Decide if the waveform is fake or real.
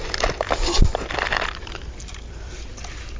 real